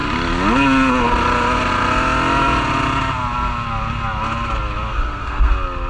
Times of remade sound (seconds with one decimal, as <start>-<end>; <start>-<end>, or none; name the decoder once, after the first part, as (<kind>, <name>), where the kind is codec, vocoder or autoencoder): 4.9-5.5 (codec, SNAC)